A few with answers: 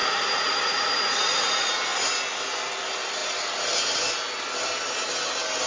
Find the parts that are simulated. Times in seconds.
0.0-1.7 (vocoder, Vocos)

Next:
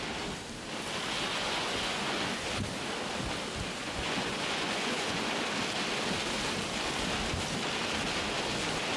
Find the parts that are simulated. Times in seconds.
1.3-2.5 (vocoder, Vocos); 3.8-5.3

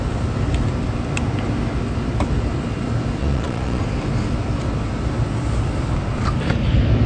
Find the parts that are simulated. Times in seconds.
3.2-3.8 (vocoder, Vocos)

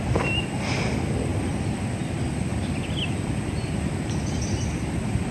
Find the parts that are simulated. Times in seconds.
none

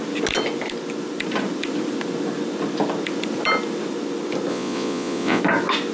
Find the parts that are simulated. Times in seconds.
4.5-5.4 (vocoder, Vocos)